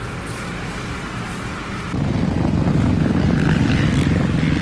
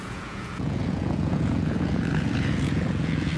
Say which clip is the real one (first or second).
first